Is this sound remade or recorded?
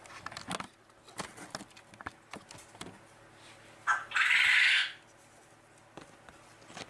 recorded